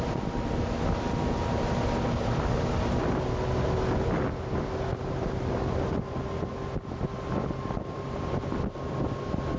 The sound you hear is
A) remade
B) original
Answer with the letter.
B